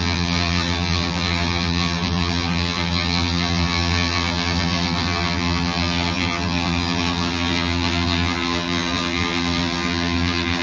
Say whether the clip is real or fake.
fake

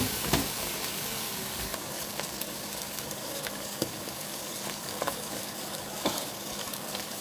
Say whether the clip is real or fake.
fake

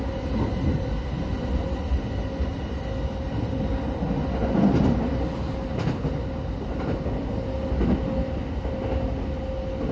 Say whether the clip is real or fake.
real